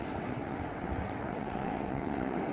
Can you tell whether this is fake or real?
fake